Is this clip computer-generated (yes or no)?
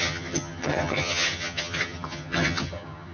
yes